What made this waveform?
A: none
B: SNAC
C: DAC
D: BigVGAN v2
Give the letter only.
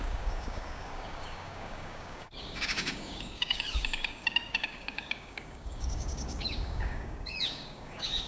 C